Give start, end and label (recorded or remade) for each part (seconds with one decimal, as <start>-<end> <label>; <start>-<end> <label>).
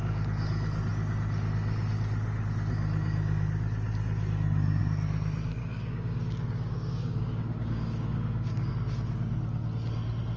0.0-5.6 recorded; 5.6-8.7 remade; 8.7-10.4 recorded